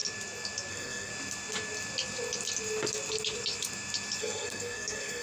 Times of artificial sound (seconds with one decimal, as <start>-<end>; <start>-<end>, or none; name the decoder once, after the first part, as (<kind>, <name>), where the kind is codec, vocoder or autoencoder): 0.7-1.1 (codec, SNAC); 4.2-5.2